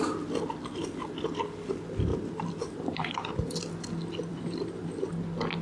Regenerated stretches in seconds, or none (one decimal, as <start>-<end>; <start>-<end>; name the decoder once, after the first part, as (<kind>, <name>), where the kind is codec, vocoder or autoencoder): 2.1-3.6 (vocoder, BigVGAN v2); 4.3-5.1